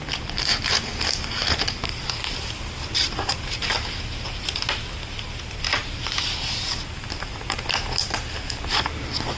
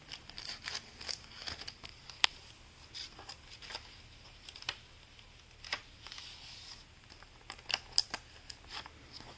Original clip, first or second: second